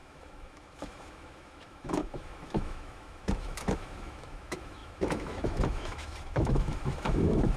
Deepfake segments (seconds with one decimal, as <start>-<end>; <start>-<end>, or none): 0.0-7.6